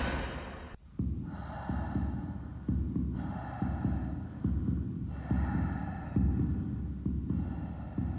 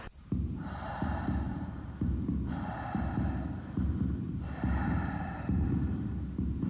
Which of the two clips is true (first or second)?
first